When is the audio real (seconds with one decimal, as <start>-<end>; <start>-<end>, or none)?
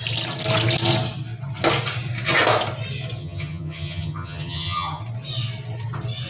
0.0-3.2; 5.0-6.3